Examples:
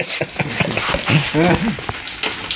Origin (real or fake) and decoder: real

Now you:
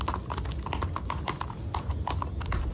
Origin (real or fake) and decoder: real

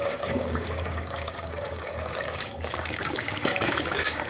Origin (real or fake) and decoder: fake, codec, DAC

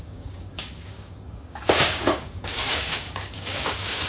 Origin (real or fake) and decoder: fake, codec, DAC